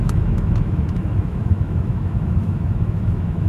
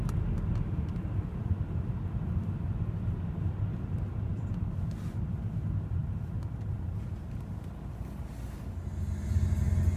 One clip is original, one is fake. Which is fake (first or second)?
first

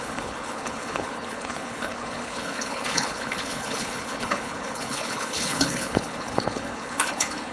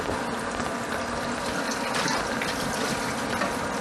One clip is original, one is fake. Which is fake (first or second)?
first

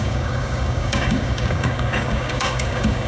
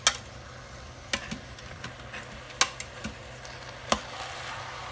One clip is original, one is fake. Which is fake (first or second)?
first